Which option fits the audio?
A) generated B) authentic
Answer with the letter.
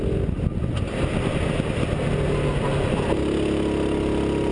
B